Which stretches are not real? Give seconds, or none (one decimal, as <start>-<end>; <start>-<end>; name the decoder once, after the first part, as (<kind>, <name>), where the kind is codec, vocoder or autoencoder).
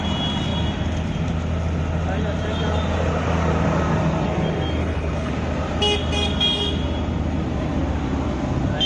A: 4.8-5.3 (codec, HILCodec)